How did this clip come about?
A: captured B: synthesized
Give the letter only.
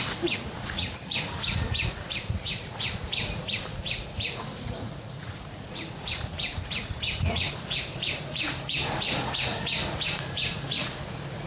B